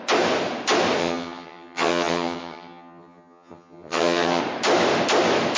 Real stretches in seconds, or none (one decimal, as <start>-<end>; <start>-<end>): 0.0-1.0; 4.4-5.6